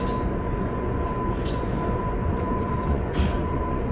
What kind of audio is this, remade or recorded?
remade